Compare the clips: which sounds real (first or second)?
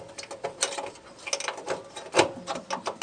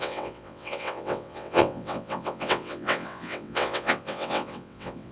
first